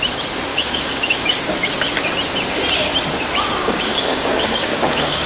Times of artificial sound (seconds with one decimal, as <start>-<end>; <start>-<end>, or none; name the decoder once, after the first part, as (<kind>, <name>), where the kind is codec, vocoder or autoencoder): 0.5-1.4 (codec, DAC); 3.6-5.3